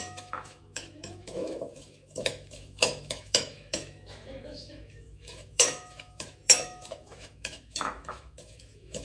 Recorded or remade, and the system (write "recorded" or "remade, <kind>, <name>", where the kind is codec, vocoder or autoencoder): remade, autoencoder, DAC-VAE